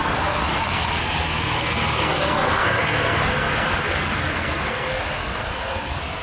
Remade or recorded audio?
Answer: remade